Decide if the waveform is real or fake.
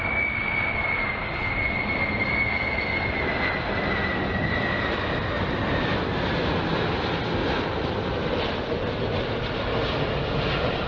real